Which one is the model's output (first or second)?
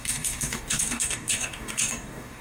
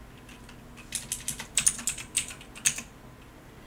first